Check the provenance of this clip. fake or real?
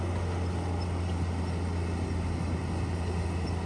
real